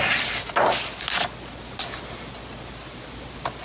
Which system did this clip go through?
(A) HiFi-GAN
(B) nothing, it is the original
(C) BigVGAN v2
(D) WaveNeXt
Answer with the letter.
B